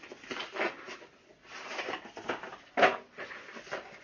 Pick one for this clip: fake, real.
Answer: real